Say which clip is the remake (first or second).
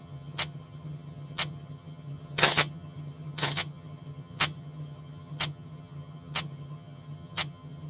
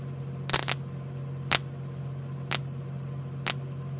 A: first